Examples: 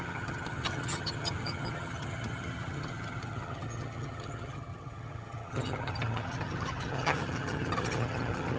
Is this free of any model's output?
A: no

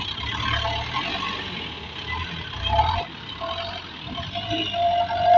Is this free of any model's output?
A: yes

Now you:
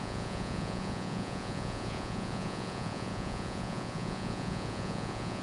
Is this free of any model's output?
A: no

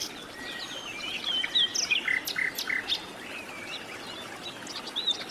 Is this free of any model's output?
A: yes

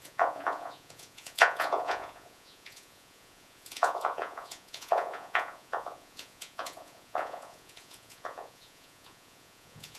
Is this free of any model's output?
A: no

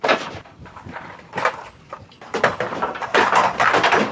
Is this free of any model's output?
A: no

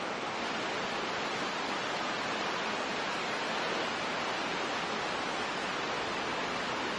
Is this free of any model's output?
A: yes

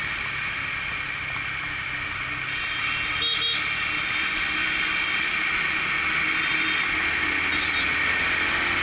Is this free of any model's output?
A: yes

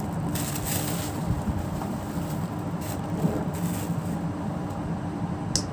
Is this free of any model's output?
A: yes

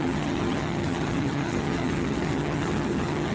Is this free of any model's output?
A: no